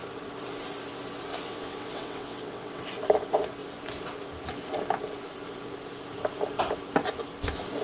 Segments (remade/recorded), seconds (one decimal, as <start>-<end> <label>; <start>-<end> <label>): 0.0-1.3 recorded; 1.3-2.8 remade; 2.8-7.8 recorded